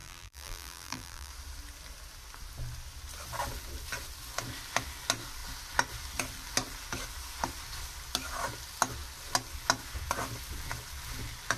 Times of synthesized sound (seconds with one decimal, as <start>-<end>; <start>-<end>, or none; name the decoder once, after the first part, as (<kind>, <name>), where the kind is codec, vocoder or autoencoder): 0.0-1.3 (vocoder, BigVGAN v2)